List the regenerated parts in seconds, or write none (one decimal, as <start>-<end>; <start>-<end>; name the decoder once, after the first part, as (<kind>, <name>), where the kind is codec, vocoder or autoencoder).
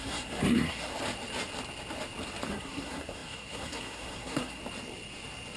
0.0-0.9 (codec, SNAC); 2.5-4.6